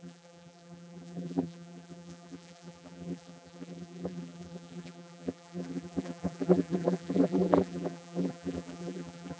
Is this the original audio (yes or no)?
no